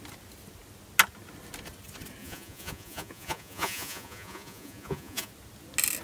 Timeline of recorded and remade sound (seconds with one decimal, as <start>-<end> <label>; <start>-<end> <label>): 0.0-2.2 recorded; 2.2-5.3 remade; 5.3-6.0 recorded